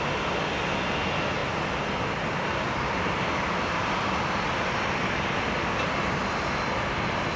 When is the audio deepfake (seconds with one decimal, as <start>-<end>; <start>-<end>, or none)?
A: none